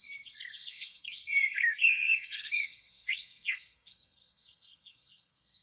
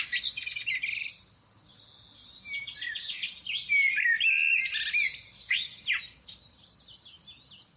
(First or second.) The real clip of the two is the second